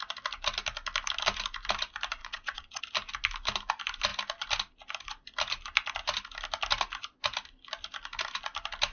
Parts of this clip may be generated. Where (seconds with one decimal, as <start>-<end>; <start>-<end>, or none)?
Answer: 2.2-2.8